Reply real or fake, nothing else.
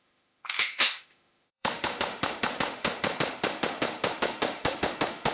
fake